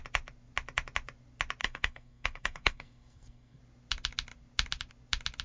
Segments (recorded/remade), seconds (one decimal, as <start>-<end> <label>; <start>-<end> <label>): 0.0-1.6 recorded; 1.6-3.6 remade; 3.6-5.4 recorded